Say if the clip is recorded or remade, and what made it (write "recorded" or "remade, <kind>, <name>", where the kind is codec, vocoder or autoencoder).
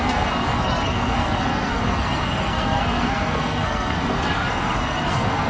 remade, codec, SNAC